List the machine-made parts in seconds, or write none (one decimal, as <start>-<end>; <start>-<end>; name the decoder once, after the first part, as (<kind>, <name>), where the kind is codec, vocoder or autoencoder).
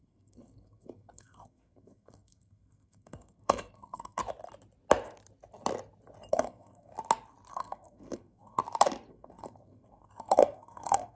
0.0-4.2 (codec, SNAC); 6.3-6.9; 7.5-8.6; 9.1-11.2